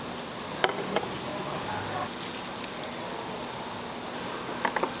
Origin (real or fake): real